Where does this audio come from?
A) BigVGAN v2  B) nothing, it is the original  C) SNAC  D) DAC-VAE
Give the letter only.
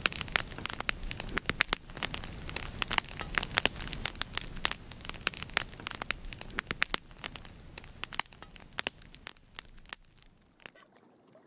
B